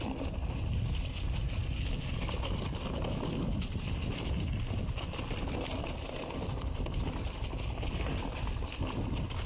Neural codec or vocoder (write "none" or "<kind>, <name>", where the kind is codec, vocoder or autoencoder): none